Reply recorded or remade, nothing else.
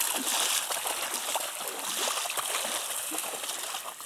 recorded